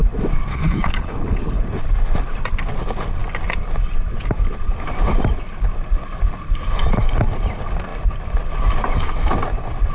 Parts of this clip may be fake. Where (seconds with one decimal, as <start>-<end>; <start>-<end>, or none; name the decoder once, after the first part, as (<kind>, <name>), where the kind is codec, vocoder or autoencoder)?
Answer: 0.5-1.6 (codec, HILCodec)